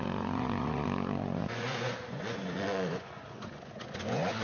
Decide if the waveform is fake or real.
fake